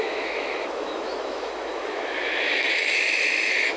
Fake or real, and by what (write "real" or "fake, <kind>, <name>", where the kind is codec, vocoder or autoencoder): fake, autoencoder, DAC-VAE